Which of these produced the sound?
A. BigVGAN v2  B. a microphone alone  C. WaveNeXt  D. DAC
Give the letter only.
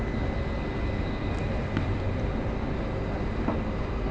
B